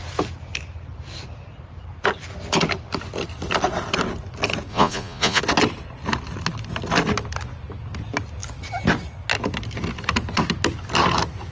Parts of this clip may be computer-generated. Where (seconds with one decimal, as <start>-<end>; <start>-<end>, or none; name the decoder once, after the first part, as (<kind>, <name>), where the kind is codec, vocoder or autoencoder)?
4.7-5.4 (vocoder, Vocos)